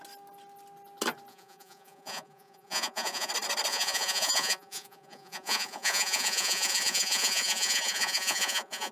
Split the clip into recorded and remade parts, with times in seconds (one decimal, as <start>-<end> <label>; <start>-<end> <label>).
0.0-1.3 recorded; 1.3-3.3 remade; 3.3-3.7 recorded; 3.7-8.9 remade